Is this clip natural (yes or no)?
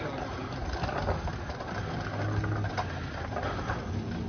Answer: yes